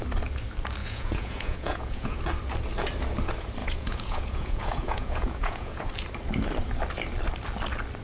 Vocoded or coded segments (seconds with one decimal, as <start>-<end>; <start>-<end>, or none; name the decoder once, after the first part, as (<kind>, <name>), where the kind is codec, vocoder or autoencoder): 0.8-2.2 (vocoder, Vocos); 3.6-5.9